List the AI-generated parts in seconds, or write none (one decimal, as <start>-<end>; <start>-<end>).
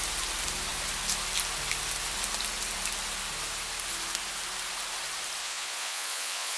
5.4-6.6